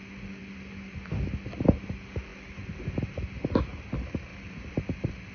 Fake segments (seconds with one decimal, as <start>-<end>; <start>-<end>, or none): none